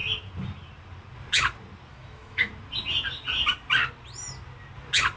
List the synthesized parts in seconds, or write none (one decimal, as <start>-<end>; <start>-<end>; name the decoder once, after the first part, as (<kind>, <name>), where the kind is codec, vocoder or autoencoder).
1.9-2.5 (autoencoder, DAC-VAE)